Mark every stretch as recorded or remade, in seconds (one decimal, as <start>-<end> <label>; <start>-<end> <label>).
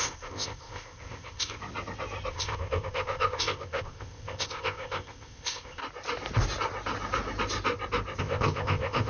0.0-1.6 remade; 1.6-2.3 recorded; 2.3-5.8 remade; 5.8-8.2 recorded; 8.2-9.1 remade